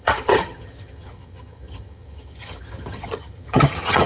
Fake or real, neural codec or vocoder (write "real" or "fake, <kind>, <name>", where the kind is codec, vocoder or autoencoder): fake, vocoder, HiFi-GAN